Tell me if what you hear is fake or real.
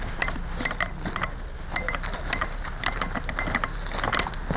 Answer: real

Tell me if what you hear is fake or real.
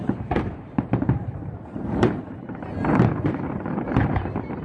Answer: fake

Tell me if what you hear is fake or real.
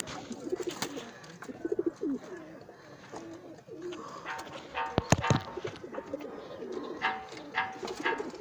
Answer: real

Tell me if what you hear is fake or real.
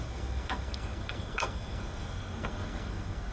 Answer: fake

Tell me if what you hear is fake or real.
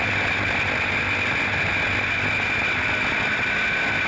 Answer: real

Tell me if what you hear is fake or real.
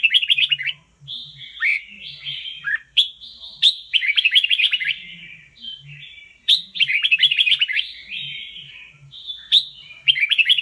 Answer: fake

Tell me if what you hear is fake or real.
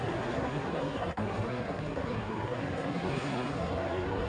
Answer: fake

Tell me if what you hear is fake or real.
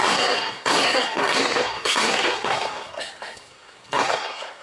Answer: fake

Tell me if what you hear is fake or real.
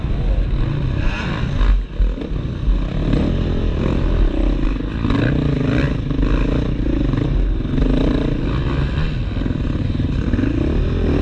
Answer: real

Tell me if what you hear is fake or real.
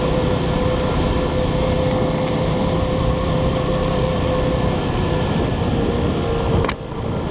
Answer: real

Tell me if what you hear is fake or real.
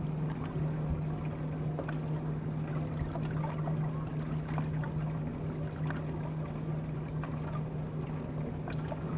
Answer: real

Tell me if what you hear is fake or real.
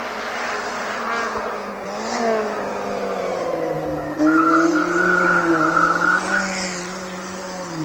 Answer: real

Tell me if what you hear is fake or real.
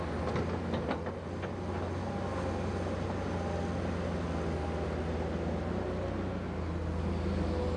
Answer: real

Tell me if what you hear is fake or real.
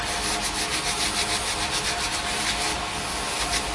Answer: real